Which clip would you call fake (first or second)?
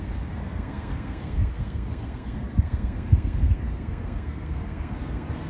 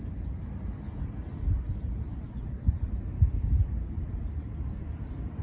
first